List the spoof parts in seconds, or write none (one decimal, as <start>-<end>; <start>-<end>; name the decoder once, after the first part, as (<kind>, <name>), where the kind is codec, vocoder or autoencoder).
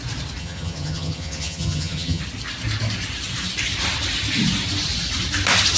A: 0.4-2.2 (vocoder, HiFi-GAN)